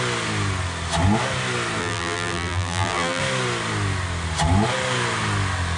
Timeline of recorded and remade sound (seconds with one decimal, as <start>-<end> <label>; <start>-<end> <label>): 0.0-1.8 recorded; 1.8-3.2 remade; 3.2-5.8 recorded